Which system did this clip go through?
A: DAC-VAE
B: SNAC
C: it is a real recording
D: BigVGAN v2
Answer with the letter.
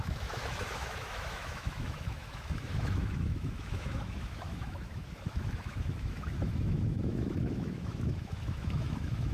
A